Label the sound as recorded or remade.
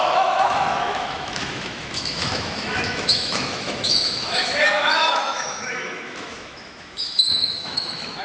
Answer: remade